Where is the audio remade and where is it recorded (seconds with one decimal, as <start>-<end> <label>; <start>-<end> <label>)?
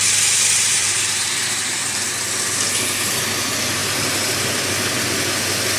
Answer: 0.0-0.8 recorded; 0.8-2.1 remade; 2.1-3.8 recorded; 3.8-4.7 remade; 4.7-5.8 recorded